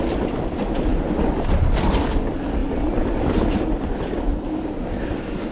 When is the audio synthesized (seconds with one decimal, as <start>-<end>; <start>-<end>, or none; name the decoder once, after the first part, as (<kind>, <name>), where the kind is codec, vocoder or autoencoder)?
0.9-1.5 (vocoder, BigVGAN v2)